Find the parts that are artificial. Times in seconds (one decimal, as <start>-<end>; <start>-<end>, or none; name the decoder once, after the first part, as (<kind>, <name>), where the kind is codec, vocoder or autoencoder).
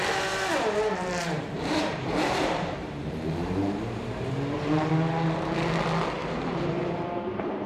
0.5-4.9 (vocoder, BigVGAN v2); 6.2-7.7